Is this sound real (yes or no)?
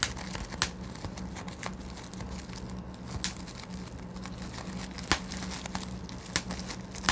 yes